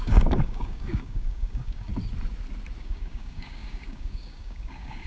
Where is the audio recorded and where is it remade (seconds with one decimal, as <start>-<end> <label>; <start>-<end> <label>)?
0.0-1.9 remade; 1.9-2.8 recorded; 2.8-5.1 remade